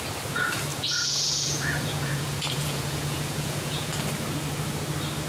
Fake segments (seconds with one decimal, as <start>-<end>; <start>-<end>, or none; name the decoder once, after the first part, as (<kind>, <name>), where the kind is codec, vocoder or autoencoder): 0.7-3.9 (vocoder, Vocos)